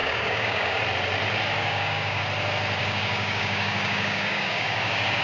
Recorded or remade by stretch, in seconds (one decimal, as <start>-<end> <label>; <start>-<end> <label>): 0.0-0.8 remade; 0.8-1.6 recorded; 1.6-2.2 remade; 2.2-2.8 recorded; 2.8-5.2 remade